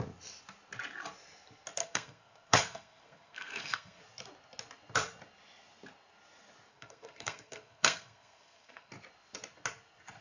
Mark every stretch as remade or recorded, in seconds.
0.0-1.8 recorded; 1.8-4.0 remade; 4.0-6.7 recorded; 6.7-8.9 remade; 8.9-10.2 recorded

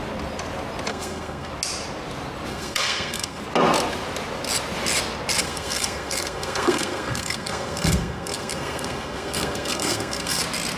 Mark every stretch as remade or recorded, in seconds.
0.0-0.9 recorded; 0.9-1.5 remade; 1.5-2.5 recorded; 2.5-3.4 remade; 3.4-5.4 recorded; 5.4-10.4 remade; 10.4-10.8 recorded

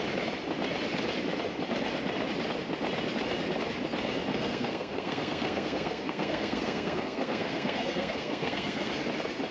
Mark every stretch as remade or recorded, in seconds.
0.0-4.3 recorded; 4.3-8.9 remade; 8.9-9.5 recorded